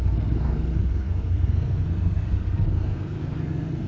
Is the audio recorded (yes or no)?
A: no